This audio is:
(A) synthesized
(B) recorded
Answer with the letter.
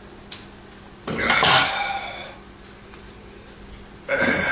B